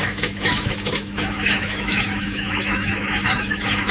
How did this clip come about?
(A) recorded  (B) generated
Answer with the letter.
B